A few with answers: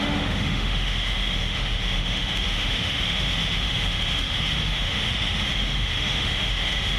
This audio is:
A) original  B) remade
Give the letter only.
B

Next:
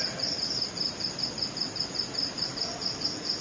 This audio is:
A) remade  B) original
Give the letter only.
B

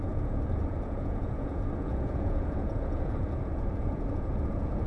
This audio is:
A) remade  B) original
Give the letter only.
A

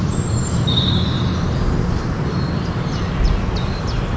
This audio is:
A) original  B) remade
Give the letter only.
A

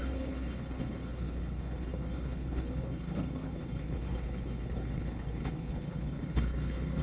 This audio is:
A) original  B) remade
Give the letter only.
B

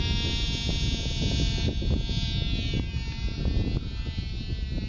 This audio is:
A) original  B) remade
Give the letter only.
A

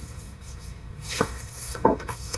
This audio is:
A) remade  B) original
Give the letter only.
A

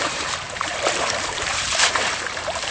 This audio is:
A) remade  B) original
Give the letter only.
A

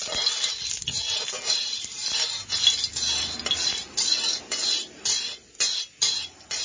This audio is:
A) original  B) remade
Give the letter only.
A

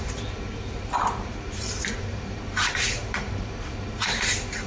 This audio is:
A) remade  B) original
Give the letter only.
A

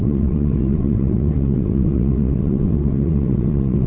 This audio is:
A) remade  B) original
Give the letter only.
A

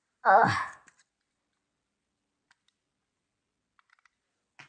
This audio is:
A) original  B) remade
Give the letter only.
A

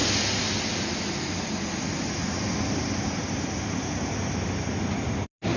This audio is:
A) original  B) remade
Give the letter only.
A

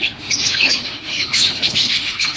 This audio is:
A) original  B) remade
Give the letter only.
B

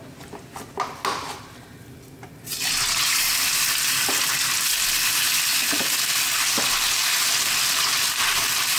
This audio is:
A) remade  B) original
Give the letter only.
B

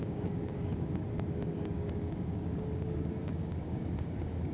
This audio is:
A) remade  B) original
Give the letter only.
A